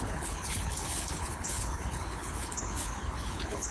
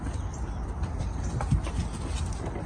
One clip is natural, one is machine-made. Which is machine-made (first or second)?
first